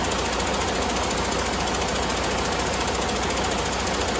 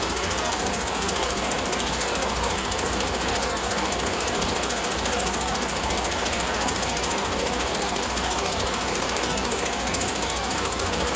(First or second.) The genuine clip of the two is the first